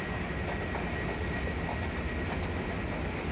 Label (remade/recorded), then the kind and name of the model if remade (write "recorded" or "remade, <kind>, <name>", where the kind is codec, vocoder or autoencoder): recorded